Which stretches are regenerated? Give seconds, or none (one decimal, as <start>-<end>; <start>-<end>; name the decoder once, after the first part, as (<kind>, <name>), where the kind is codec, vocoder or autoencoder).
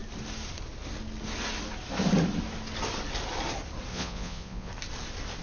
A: 3.9-4.7 (vocoder, Vocos)